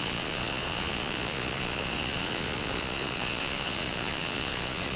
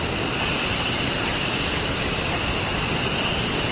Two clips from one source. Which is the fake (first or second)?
first